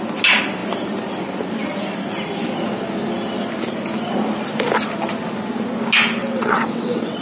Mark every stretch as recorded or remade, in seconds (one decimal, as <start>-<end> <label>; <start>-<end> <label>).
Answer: 0.0-6.2 recorded; 6.2-7.2 remade